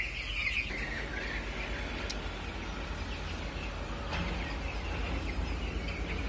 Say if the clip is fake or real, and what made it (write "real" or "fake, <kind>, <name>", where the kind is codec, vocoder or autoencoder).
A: real